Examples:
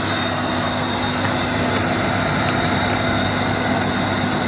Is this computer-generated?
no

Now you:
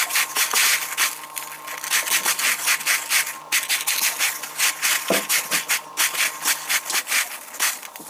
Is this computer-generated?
no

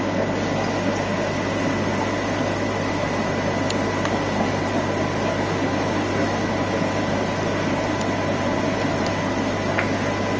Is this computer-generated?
no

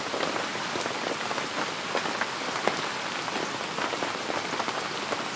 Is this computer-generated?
no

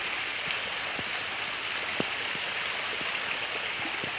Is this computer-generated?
no